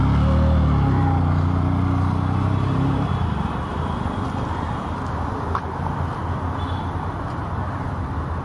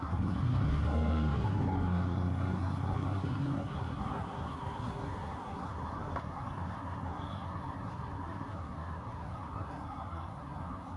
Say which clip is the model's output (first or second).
second